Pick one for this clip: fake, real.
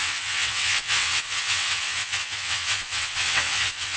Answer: fake